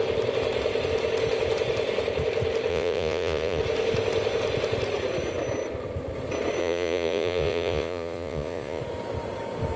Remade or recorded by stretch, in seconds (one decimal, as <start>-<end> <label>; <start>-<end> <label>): 0.0-2.7 recorded; 2.7-3.6 remade; 3.6-6.6 recorded; 6.6-8.8 remade; 8.8-9.8 recorded